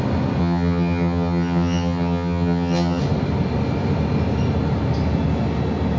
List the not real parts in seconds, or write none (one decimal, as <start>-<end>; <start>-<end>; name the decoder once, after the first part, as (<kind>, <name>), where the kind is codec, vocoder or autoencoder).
0.4-3.0 (vocoder, HiFi-GAN)